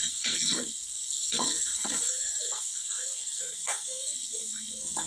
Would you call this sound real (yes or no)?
no